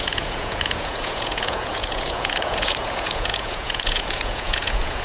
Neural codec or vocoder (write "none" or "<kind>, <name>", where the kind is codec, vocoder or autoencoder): vocoder, Vocos